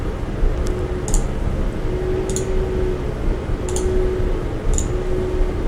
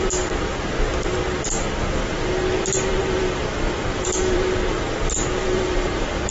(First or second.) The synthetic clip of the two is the second